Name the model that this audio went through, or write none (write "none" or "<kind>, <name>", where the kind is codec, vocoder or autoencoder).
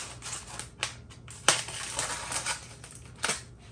none